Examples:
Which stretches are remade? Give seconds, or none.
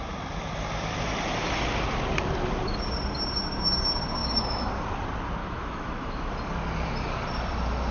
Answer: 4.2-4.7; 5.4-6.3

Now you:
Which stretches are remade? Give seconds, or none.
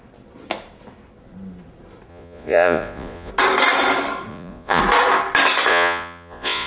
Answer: 2.1-3.3; 4.3-4.8; 5.7-6.7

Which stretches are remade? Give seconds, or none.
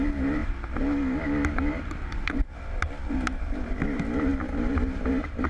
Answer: none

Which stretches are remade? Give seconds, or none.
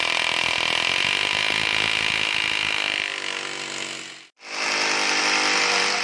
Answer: 0.0-1.6; 5.2-6.0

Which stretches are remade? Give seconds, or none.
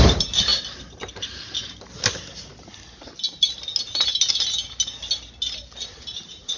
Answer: none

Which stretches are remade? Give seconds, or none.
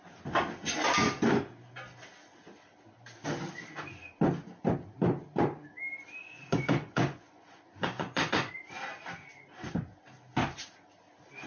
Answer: 6.2-8.5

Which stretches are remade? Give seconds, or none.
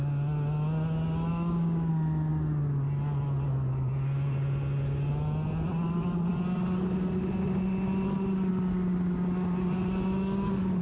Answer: 1.3-1.9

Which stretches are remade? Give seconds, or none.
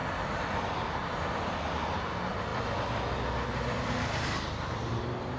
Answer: none